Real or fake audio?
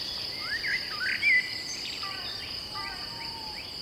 real